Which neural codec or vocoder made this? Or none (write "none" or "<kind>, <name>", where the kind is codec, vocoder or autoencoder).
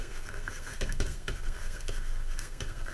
codec, SNAC